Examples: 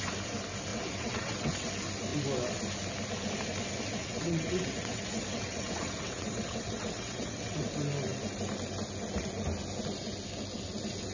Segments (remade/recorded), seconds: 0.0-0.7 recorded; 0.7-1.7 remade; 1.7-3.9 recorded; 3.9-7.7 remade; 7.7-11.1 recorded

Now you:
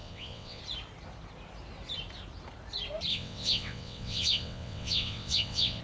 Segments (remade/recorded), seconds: 0.0-0.6 remade; 0.6-3.1 recorded; 3.1-5.8 remade

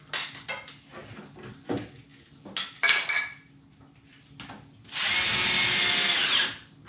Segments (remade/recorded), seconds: 0.0-6.9 recorded

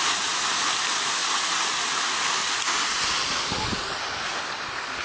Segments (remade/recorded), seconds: 0.0-5.0 recorded

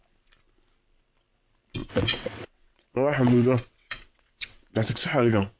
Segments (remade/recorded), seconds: 0.0-1.8 recorded; 1.8-5.6 remade

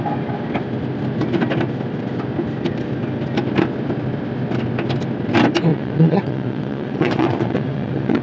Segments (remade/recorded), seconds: 0.0-5.7 recorded; 5.7-8.2 remade

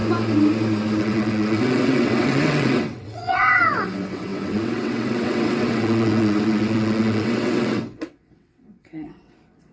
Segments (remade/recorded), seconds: 0.0-1.0 recorded; 1.0-9.7 remade